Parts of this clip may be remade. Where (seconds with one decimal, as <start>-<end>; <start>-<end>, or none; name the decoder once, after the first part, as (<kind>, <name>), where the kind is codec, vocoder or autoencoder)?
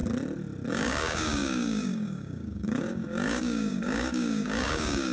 0.7-5.1 (codec, DAC)